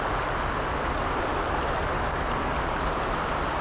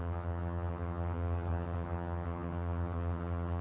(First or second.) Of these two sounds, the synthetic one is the second